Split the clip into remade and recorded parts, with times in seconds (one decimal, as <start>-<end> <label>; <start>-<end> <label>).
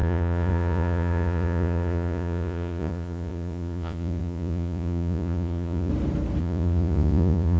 0.0-5.9 remade; 5.9-6.4 recorded; 6.4-7.6 remade